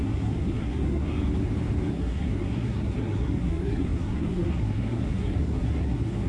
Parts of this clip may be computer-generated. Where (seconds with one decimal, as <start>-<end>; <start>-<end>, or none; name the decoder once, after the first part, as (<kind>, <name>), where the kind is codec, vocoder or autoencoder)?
0.0-1.1 (codec, SNAC); 1.9-6.3